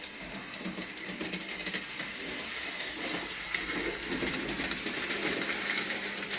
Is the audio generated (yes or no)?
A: no